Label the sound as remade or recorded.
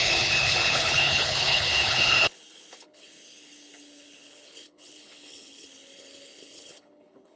remade